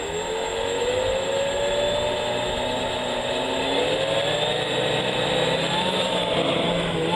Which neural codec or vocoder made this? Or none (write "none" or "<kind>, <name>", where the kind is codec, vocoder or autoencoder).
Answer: none